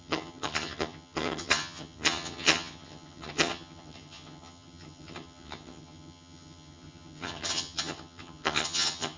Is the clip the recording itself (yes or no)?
no